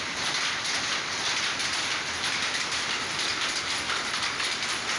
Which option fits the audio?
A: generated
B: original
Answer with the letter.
B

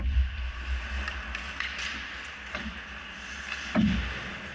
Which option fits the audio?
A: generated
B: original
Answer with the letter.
B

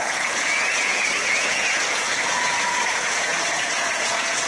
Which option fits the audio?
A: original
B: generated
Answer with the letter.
B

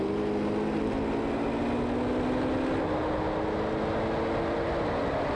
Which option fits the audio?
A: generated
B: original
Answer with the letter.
B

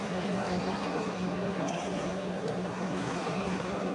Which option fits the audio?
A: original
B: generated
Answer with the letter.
B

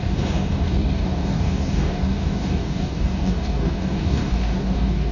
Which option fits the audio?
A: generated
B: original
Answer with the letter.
A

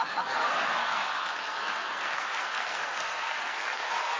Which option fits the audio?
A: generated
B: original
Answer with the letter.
A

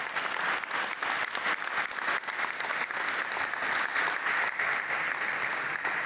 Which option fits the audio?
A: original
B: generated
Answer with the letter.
A